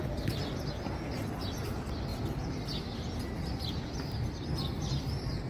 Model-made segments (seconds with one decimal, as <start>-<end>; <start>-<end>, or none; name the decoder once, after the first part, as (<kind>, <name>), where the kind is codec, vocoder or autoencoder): none